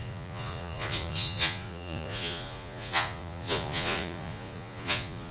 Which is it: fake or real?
fake